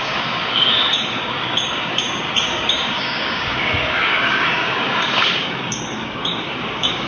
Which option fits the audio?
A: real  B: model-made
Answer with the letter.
B